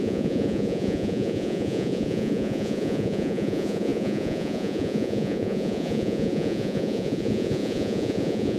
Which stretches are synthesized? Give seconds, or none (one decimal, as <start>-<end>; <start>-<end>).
0.0-8.6